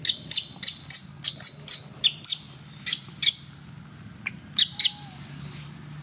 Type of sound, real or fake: real